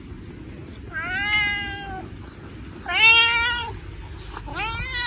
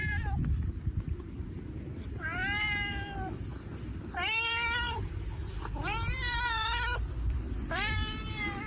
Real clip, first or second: first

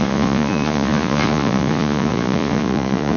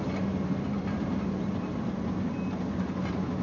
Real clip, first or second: second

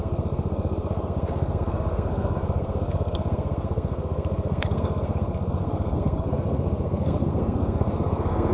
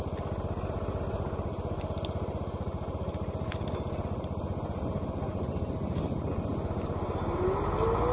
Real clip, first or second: second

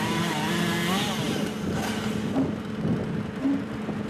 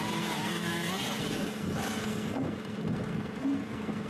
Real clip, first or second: first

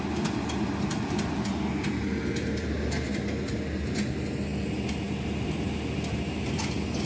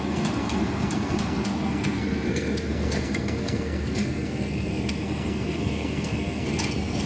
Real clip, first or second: first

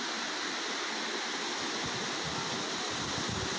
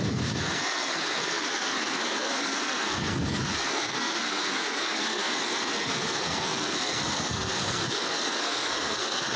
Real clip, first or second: first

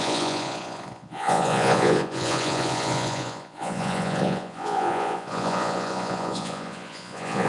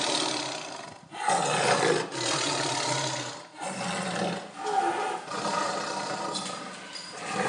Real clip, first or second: second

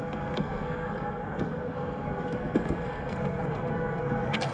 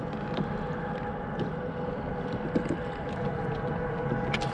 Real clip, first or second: second